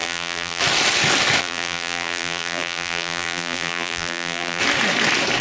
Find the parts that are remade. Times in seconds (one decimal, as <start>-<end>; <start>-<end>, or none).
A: 0.0-0.6; 1.4-4.6